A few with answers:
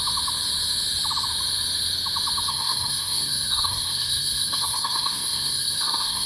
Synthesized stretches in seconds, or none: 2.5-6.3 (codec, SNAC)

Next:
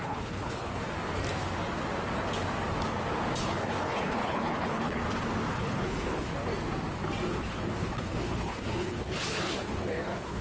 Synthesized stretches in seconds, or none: 0.0-0.8 (codec, HILCodec); 3.4-5.0; 5.5-6.3; 7.3-10.4

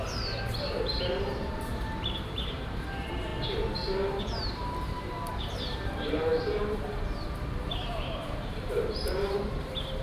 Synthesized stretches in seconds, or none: 0.0-3.3 (vocoder, BigVGAN v2); 4.2-10.0

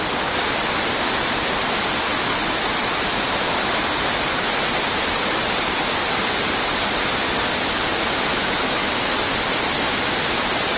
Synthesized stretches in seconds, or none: 8.3-8.9 (autoencoder, DAC-VAE)